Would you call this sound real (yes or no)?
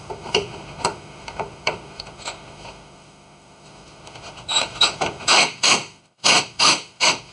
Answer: no